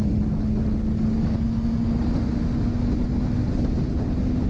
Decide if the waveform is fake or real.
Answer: real